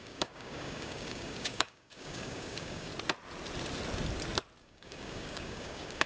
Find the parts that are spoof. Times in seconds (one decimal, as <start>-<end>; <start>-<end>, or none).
0.0-2.9; 4.6-6.1